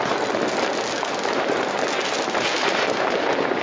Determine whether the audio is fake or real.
real